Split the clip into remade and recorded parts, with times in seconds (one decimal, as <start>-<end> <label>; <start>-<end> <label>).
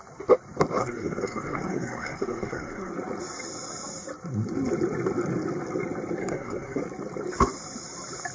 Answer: 0.0-0.8 recorded; 0.8-2.9 remade; 2.9-6.2 recorded; 6.2-6.8 remade; 6.8-8.3 recorded